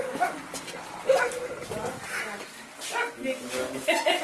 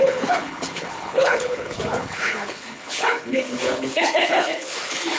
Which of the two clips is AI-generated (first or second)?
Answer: second